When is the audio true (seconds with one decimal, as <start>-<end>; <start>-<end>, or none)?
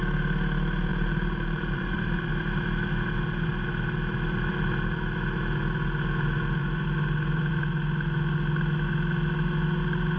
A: 0.0-0.9; 2.3-6.6; 7.5-10.2